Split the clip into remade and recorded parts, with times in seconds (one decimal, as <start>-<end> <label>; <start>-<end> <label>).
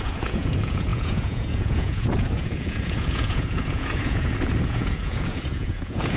0.0-6.2 remade